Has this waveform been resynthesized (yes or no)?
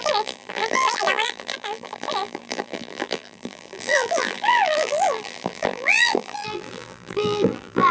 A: yes